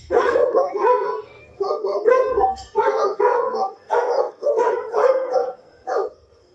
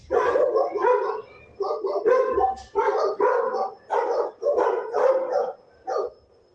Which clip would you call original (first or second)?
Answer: second